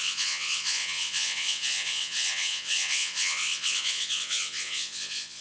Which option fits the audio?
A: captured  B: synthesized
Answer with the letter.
B